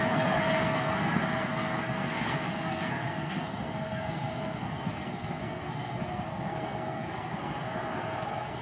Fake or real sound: fake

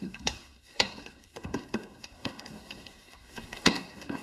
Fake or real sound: fake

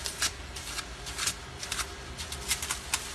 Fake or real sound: real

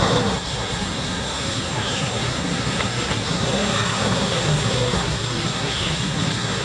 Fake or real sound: fake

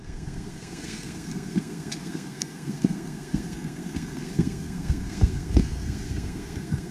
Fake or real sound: fake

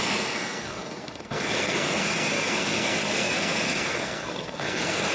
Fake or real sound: fake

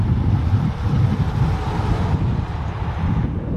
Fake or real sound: real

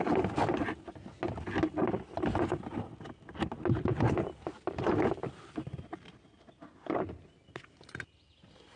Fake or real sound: real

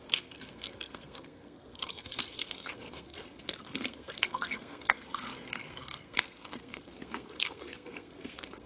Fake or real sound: fake